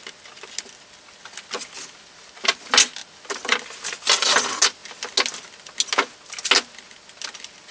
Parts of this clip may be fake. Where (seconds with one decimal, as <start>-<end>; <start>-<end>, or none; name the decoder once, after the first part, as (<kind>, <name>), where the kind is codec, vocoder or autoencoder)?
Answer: none